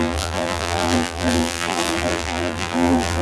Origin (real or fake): fake